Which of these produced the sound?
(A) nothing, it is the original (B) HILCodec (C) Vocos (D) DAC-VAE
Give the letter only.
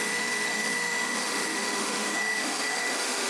D